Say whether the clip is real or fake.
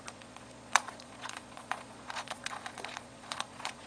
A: fake